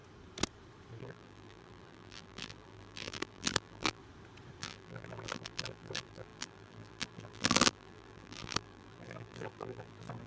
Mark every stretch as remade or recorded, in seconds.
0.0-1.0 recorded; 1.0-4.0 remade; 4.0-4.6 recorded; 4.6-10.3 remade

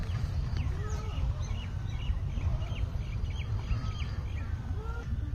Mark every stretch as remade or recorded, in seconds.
0.0-0.7 remade; 0.7-2.5 recorded; 2.5-3.2 remade; 3.2-5.3 recorded

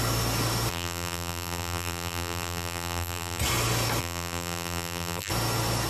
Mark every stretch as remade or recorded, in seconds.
0.0-0.7 recorded; 0.7-3.4 remade; 3.4-4.0 recorded; 4.0-5.3 remade; 5.3-5.9 recorded